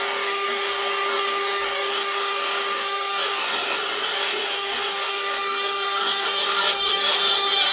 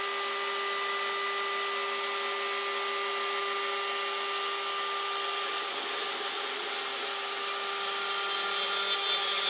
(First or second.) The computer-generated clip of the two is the first